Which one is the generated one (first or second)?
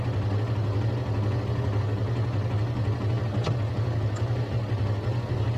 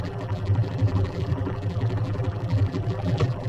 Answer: second